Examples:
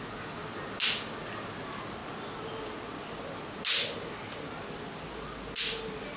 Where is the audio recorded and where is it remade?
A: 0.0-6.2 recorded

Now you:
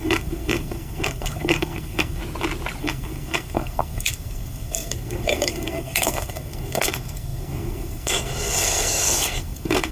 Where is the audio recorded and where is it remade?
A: 0.0-2.2 remade; 2.2-2.8 recorded; 2.8-9.9 remade

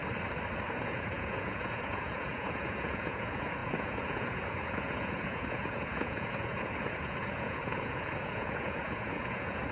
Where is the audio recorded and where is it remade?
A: 0.0-0.7 recorded; 0.7-9.7 remade

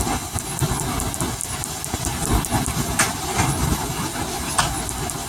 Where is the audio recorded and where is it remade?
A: 0.0-1.4 recorded; 1.4-4.6 remade; 4.6-5.3 recorded

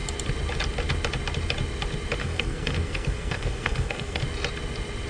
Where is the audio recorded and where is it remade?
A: 0.0-2.2 recorded; 2.2-4.2 remade; 4.2-5.1 recorded